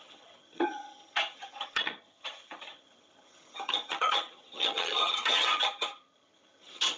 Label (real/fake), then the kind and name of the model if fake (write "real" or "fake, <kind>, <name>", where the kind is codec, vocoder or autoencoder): fake, vocoder, HiFi-GAN